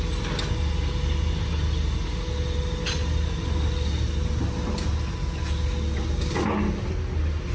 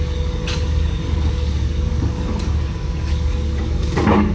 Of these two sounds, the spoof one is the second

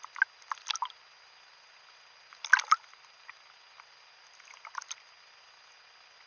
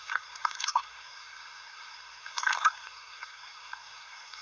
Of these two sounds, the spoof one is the second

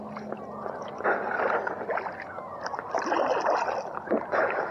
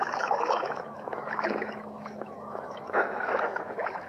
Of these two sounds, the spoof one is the second